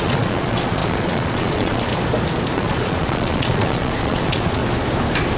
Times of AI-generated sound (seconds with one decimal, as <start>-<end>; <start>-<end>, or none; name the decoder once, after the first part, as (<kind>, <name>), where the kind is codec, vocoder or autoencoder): 0.0-1.9 (vocoder, Vocos); 2.5-4.6